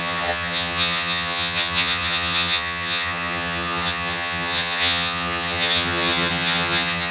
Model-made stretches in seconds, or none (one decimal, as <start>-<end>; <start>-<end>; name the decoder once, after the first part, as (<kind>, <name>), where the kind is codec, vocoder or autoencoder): 0.0-7.1 (vocoder, HiFi-GAN)